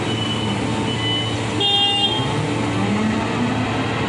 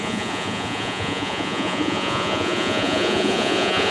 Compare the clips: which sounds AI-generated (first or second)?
second